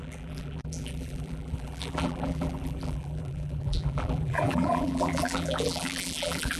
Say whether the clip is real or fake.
fake